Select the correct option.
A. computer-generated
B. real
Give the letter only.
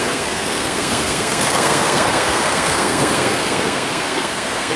A